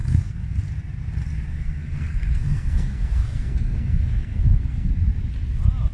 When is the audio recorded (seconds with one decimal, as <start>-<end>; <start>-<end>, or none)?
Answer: 0.6-1.5; 4.9-5.9